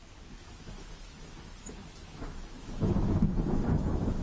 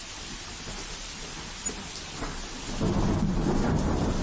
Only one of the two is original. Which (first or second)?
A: second